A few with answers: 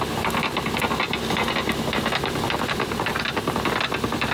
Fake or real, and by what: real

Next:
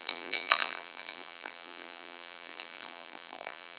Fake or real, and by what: fake, vocoder, BigVGAN v2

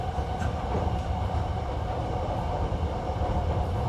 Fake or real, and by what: fake, vocoder, BigVGAN v2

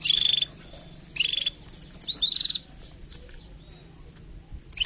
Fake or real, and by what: real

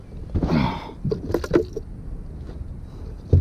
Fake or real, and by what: real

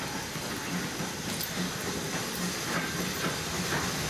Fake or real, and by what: real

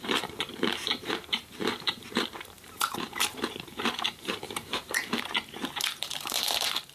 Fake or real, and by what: fake, vocoder, BigVGAN v2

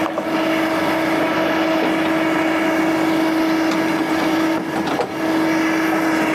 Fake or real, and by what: real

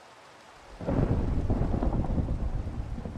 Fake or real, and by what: real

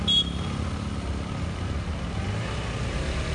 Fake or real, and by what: real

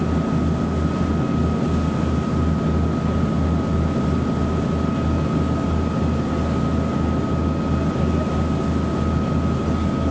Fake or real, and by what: real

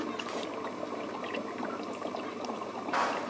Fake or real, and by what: fake, vocoder, BigVGAN v2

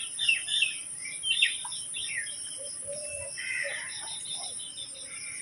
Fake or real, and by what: fake, vocoder, BigVGAN v2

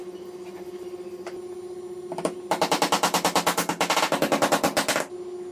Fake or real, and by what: real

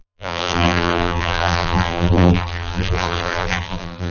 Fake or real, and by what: fake, vocoder, BigVGAN v2